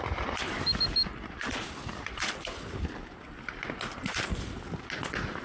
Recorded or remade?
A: recorded